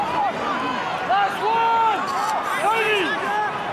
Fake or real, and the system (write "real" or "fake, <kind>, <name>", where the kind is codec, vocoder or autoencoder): real